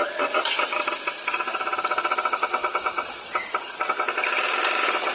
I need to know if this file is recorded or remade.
remade